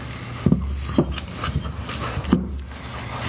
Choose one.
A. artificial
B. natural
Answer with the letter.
B